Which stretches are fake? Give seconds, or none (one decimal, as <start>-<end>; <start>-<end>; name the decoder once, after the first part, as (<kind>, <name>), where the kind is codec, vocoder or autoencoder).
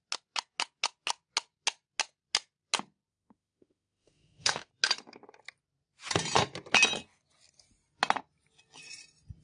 3.1-4.7 (autoencoder, DAC-VAE)